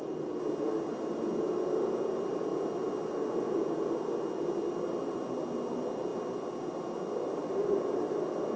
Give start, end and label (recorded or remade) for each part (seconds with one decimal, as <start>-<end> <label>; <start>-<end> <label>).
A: 0.0-8.6 recorded